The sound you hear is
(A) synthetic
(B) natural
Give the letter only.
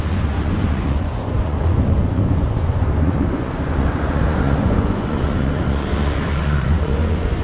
A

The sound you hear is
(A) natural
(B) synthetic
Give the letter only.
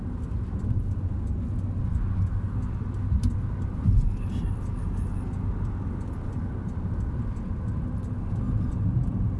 A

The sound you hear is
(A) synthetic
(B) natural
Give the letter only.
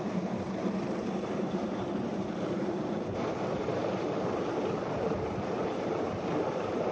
A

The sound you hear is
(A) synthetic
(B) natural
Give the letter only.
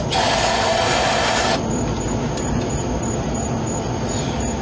B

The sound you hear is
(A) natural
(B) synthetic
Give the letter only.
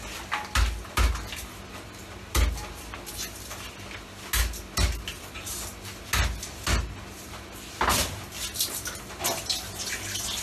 A